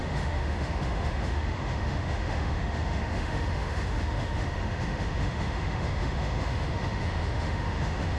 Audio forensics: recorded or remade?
remade